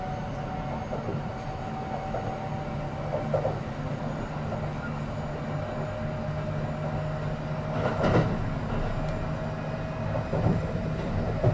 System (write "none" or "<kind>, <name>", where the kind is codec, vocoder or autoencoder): none